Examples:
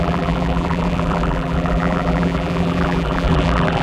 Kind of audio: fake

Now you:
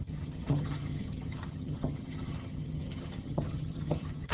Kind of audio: fake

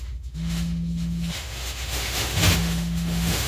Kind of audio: fake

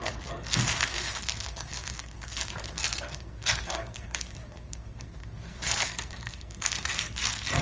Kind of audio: fake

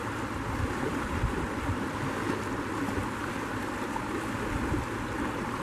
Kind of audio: real